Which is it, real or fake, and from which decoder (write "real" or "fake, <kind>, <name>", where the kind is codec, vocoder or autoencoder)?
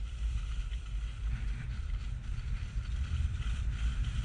real